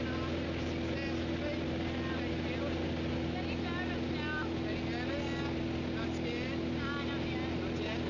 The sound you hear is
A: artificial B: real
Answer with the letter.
B